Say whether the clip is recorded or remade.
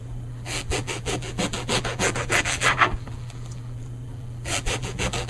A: remade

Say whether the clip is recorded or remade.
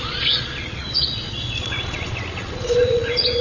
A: remade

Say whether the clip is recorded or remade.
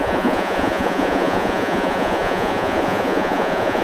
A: remade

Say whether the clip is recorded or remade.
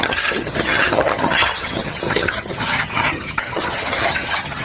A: remade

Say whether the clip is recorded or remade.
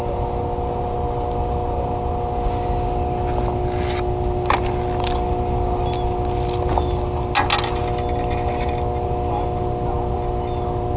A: recorded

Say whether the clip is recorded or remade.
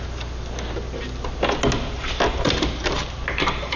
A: recorded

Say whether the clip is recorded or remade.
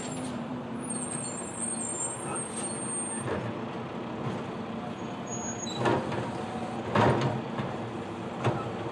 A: recorded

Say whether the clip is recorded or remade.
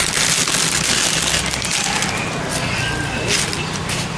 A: recorded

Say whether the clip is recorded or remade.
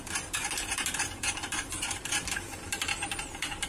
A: remade